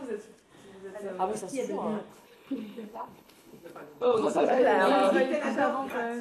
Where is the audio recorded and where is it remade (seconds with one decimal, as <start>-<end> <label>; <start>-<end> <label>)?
0.0-2.1 recorded; 2.1-4.6 remade; 4.6-6.2 recorded